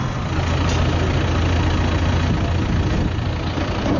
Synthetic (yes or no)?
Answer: no